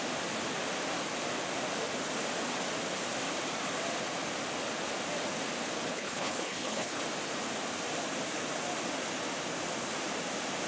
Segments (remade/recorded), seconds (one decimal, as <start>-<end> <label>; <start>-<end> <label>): 0.0-5.9 recorded; 5.9-7.0 remade; 7.0-10.7 recorded

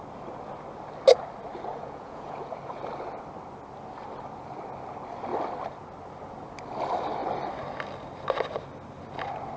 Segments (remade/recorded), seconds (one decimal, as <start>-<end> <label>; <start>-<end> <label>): 0.0-1.7 recorded; 1.7-2.8 remade; 2.8-9.6 recorded

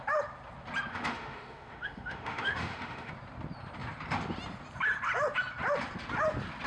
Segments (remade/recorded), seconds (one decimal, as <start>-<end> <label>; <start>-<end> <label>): 0.0-0.9 recorded; 0.9-3.1 remade; 3.1-6.7 recorded

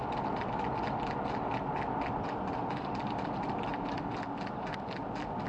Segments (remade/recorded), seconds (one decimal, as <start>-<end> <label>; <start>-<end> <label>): 0.0-5.5 recorded

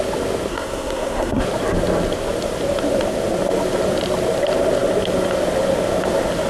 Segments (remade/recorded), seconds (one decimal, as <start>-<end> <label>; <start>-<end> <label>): 0.0-0.5 recorded; 0.5-1.4 remade; 1.4-6.5 recorded

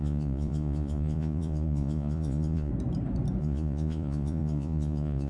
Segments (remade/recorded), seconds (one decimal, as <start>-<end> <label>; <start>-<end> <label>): 0.0-2.7 remade; 2.7-3.4 recorded; 3.4-5.3 remade